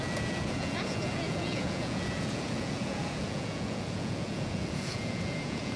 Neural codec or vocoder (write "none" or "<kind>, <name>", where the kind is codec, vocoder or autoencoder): vocoder, Vocos